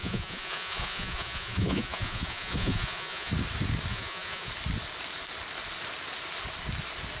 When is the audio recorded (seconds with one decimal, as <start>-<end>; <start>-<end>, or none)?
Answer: 3.3-3.9; 4.5-7.2